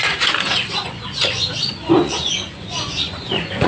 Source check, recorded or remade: remade